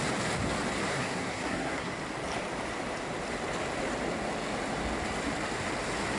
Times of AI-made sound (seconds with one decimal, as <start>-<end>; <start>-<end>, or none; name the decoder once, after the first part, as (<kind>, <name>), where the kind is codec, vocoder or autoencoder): 0.9-1.9 (codec, SNAC)